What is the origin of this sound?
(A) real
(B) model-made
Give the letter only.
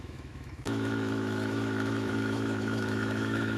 B